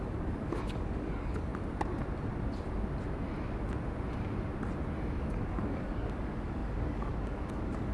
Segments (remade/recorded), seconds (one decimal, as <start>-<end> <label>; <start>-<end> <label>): 0.0-1.5 remade; 1.5-5.2 recorded; 5.2-7.9 remade